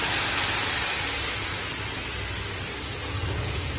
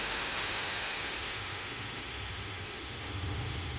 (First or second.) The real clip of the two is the first